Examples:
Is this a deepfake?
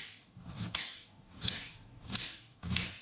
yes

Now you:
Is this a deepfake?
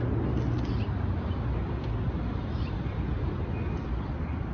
no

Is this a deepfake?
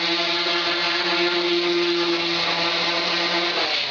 no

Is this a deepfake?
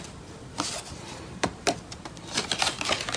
yes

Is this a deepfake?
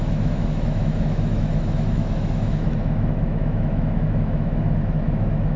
yes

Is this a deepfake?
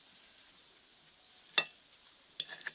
no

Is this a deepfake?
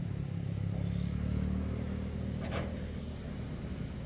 no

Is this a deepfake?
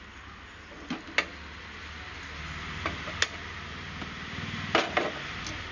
no